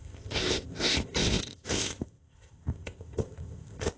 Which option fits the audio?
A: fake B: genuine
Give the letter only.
A